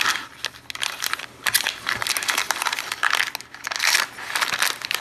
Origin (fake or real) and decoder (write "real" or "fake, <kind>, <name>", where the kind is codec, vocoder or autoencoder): real